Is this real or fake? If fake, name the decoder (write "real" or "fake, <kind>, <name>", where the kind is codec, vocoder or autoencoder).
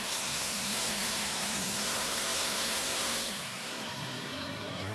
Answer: fake, codec, SNAC